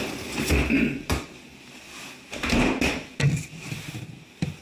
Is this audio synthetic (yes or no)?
no